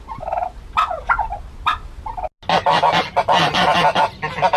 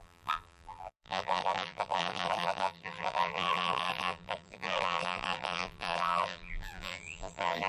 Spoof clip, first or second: second